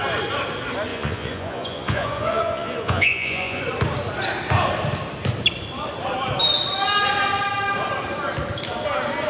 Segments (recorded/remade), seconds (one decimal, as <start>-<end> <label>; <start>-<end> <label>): 0.0-0.9 recorded; 0.9-3.6 remade; 3.6-9.3 recorded